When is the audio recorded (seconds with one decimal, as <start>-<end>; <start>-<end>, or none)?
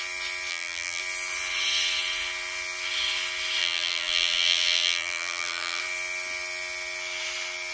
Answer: 0.0-0.5; 1.0-3.6; 5.8-7.7